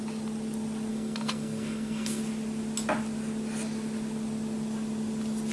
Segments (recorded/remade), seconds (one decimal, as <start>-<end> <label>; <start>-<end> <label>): 0.0-0.9 recorded; 0.9-2.2 remade; 2.2-5.5 recorded